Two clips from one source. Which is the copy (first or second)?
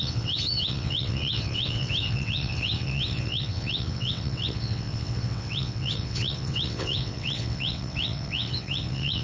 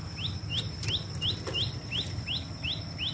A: first